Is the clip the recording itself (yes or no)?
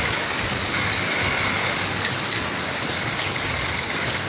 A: no